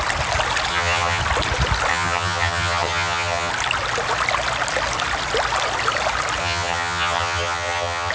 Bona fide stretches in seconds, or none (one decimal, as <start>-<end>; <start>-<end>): 0.0-0.7; 1.2-1.9; 3.5-6.4